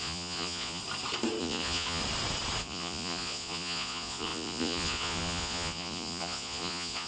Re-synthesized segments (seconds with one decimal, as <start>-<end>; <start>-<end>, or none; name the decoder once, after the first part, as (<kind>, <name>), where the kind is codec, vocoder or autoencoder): 0.0-0.8 (vocoder, Vocos); 1.4-2.0; 2.6-7.1